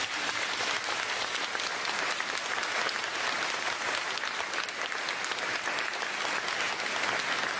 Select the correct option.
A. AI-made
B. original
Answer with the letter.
B